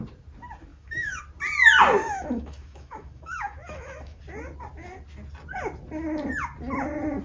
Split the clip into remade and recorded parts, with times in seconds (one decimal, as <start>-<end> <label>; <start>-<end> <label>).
0.0-0.7 recorded; 0.7-1.2 remade; 1.2-2.0 recorded; 2.0-4.2 remade; 4.2-7.2 recorded